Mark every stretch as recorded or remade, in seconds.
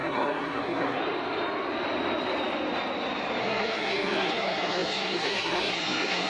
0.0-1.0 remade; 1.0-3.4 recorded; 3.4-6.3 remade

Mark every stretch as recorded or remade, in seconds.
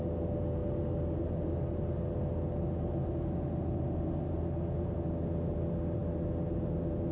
0.0-7.1 recorded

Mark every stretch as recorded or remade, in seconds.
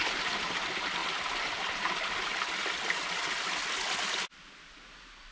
0.0-5.3 recorded